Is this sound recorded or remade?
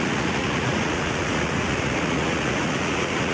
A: remade